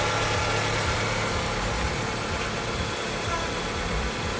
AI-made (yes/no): no